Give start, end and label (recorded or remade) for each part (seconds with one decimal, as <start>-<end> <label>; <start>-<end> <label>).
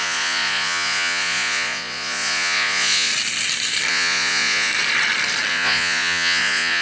0.0-3.1 remade; 3.1-3.9 recorded; 3.9-4.7 remade; 4.7-5.5 recorded; 5.5-6.8 remade